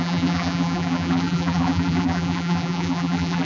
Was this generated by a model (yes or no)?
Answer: yes